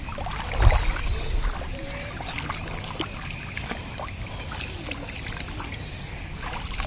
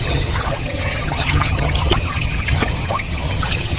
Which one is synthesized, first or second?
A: second